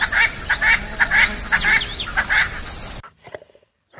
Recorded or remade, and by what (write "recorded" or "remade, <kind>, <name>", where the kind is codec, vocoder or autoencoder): recorded